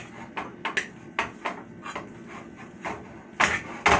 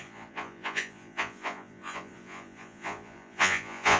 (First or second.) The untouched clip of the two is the first